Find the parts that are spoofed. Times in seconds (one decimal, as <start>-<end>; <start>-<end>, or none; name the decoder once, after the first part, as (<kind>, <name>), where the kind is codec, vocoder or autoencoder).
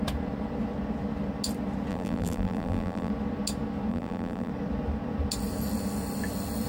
1.9-3.1 (vocoder, BigVGAN v2); 3.9-4.5